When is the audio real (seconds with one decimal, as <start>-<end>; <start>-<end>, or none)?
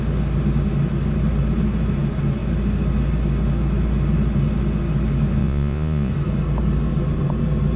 0.0-5.4; 6.1-7.8